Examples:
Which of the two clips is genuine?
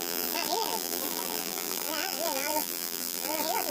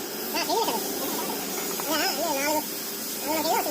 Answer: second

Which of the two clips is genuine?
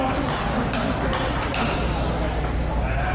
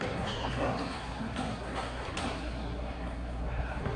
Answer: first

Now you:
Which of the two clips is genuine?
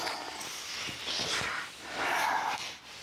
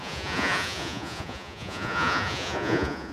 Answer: first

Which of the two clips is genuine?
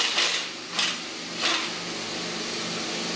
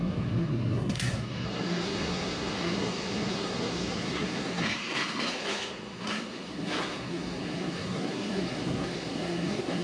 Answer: first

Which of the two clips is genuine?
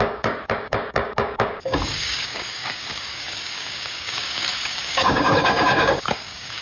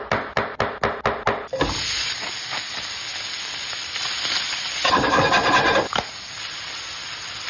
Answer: second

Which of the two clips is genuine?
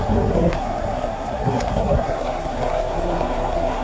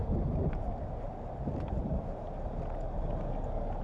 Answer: second